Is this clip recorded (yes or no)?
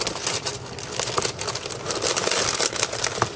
yes